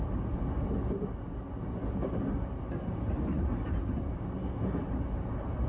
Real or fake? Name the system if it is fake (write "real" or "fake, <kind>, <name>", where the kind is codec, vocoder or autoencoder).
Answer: real